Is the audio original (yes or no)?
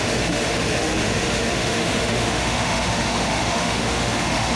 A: no